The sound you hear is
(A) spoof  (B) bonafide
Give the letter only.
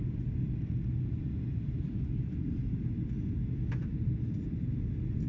B